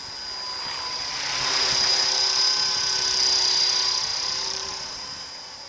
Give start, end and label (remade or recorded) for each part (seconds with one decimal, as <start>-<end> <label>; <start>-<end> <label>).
0.0-4.1 recorded; 4.1-4.7 remade; 4.7-5.7 recorded